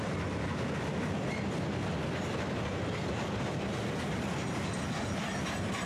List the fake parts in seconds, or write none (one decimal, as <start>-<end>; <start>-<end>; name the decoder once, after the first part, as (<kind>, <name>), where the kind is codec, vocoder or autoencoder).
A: none